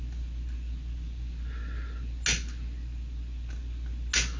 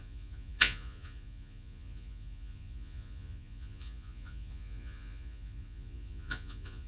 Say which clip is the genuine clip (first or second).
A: first